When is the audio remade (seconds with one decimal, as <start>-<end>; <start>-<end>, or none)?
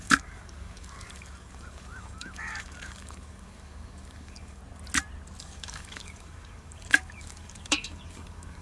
0.0-4.6; 5.4-8.6